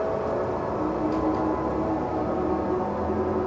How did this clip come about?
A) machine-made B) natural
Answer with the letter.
B